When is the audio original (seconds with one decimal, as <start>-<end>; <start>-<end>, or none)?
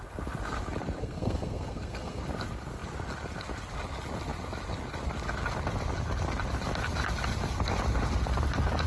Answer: 0.0-1.0; 2.2-8.9